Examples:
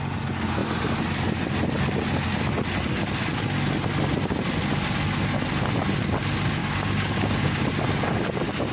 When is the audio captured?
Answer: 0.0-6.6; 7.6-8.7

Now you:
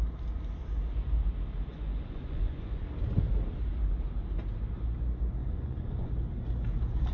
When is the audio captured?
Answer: 0.0-1.7; 2.8-5.4; 6.1-7.1

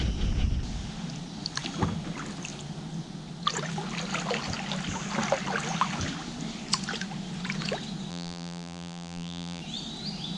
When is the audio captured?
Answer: 0.0-8.1; 9.6-10.4

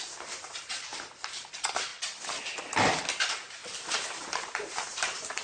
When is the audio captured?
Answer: 1.9-3.1; 3.6-4.2

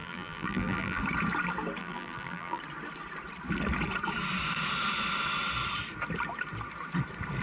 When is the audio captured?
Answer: 1.0-1.8; 2.6-7.4

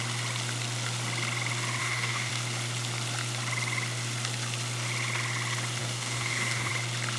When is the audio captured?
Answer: 0.0-1.8; 2.3-5.8; 6.7-7.2

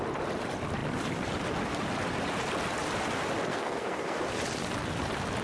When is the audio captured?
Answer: 0.0-3.5; 4.2-5.4

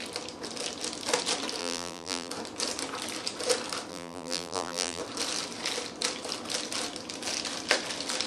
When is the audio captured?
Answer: 0.0-1.6; 2.3-3.9; 5.0-8.3